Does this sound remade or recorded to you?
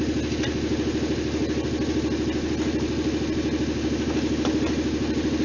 recorded